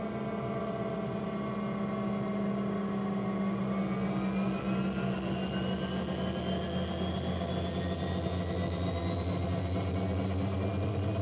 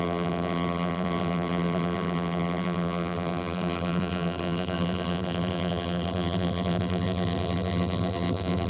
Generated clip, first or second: second